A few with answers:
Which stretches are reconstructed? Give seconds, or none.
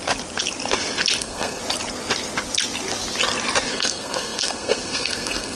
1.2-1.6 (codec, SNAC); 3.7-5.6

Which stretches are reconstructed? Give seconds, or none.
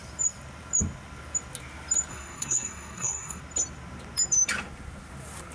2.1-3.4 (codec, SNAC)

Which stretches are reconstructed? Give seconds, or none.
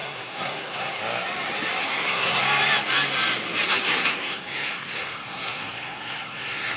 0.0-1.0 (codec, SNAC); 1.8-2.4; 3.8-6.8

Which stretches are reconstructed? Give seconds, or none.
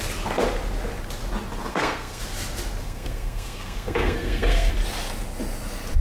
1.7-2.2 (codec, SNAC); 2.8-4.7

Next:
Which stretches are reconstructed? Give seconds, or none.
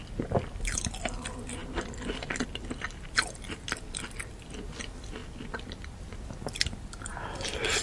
none